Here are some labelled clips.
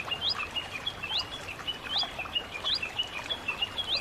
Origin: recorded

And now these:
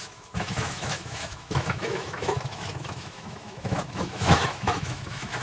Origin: remade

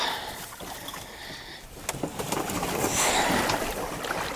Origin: recorded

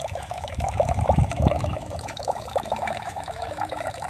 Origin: remade